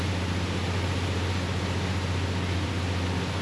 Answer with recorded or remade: recorded